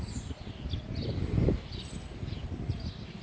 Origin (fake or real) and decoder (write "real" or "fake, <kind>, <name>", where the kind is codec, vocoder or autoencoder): real